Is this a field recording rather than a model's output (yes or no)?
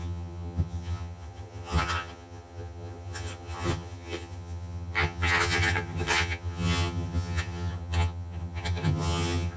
no